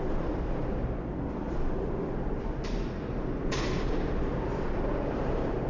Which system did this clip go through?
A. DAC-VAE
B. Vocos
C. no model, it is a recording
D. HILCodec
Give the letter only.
C